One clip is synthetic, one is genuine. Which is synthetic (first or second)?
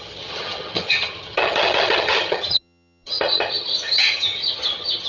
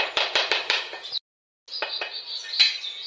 first